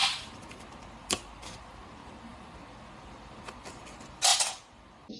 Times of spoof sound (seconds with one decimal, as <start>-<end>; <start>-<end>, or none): none